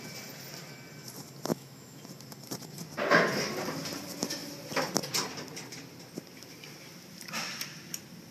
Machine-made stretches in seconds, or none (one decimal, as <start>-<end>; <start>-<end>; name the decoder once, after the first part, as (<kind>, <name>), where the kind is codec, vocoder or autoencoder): 1.5-2.0 (autoencoder, DAC-VAE)